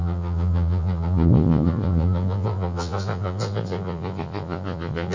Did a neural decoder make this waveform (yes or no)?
yes